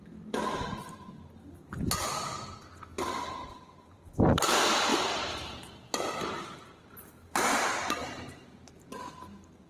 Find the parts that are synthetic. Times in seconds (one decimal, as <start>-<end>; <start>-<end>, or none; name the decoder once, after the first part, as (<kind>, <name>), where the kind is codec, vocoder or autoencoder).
2.9-3.5 (vocoder, BigVGAN v2); 4.9-5.9; 8.0-9.1